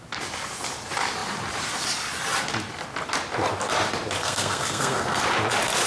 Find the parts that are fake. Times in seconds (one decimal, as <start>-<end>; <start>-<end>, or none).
4.2-5.2

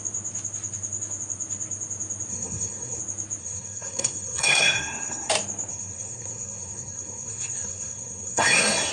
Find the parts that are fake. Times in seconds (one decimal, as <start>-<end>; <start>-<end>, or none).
2.3-3.0; 3.4-5.3; 5.7-8.9

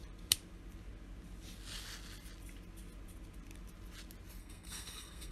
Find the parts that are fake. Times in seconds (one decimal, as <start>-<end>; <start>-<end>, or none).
4.4-5.3

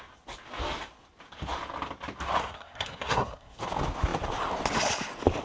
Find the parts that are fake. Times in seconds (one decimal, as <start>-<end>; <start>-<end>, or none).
2.4-3.6

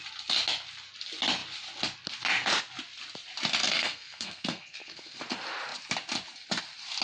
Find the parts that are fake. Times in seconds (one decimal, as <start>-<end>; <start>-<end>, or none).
3.6-5.2

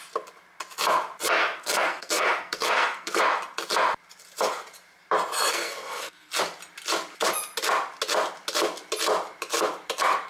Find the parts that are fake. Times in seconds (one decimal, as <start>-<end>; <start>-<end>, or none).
1.4-3.2; 5.5-6.3

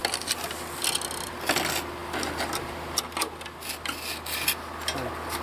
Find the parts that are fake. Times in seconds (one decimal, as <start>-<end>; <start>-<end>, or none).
none